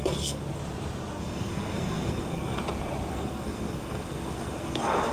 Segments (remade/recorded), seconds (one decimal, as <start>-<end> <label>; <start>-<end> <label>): 0.0-0.4 remade; 0.4-1.1 recorded; 1.1-2.6 remade; 2.6-3.1 recorded; 3.1-5.1 remade